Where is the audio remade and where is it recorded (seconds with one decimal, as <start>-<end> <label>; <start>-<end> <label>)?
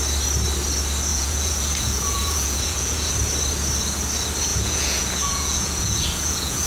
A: 0.0-1.1 recorded; 1.1-3.1 remade; 3.1-4.5 recorded; 4.5-6.7 remade